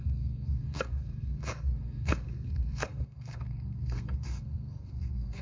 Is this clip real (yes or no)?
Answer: no